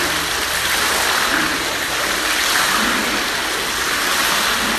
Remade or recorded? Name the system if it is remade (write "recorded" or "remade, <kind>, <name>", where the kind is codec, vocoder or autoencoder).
recorded